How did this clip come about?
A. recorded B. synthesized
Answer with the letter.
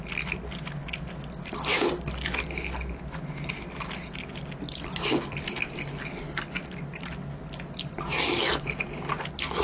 A